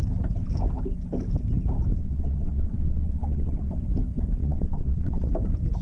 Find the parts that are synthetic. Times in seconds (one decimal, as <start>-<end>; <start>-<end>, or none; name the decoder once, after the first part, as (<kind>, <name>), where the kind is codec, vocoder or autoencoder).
2.0-3.7 (vocoder, WaveNeXt); 4.4-5.3